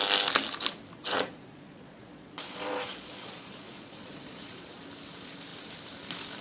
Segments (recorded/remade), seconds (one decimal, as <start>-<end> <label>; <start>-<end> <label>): 0.0-1.0 recorded; 1.0-4.8 remade; 4.8-6.4 recorded